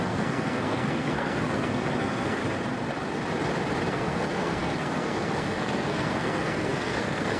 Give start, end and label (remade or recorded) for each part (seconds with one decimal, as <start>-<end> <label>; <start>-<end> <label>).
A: 0.0-2.4 remade; 2.4-3.9 recorded; 3.9-7.4 remade